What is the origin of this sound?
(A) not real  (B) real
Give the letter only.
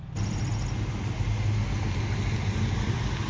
B